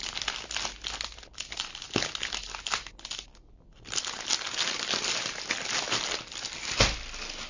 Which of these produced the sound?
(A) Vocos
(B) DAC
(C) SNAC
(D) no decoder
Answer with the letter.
D